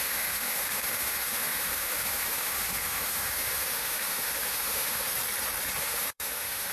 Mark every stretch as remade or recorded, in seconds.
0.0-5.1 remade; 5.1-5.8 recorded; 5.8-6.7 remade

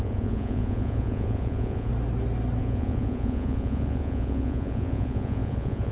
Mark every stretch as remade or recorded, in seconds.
0.0-1.9 remade; 1.9-2.6 recorded; 2.6-5.9 remade